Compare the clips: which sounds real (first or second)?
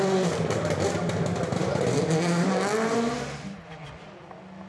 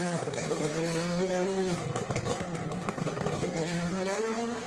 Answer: first